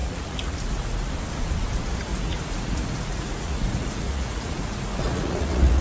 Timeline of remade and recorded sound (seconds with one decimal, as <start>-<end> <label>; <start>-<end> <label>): 0.0-1.1 remade; 1.1-2.1 recorded; 2.1-5.8 remade